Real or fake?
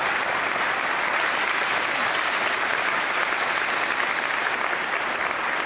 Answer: real